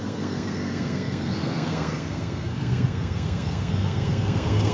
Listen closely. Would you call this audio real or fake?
fake